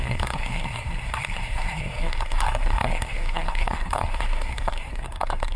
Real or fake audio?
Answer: fake